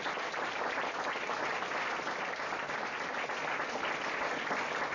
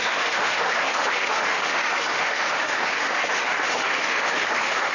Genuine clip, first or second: first